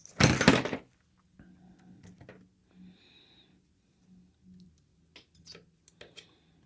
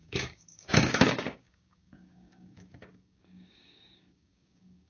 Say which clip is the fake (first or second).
second